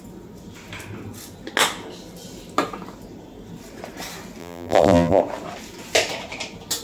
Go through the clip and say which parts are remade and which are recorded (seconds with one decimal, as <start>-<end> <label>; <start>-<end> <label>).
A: 0.0-4.4 recorded; 4.4-5.2 remade; 5.2-6.8 recorded